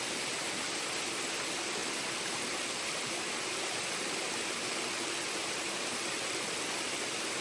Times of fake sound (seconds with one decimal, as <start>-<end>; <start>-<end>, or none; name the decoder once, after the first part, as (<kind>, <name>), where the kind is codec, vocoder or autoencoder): none